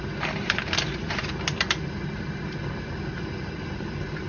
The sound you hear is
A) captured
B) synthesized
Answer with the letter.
A